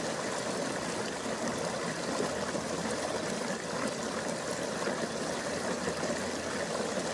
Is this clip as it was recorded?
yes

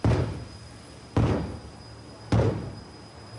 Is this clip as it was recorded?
yes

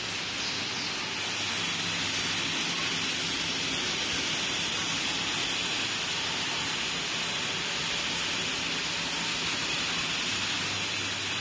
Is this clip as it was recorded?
yes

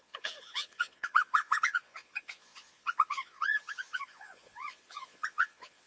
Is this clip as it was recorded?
no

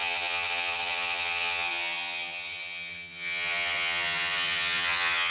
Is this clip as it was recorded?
no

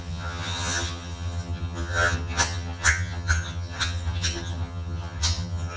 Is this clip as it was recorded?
no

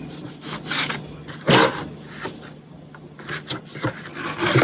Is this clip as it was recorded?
yes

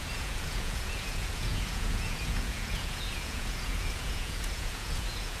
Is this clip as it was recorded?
no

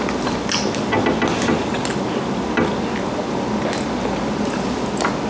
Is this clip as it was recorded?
yes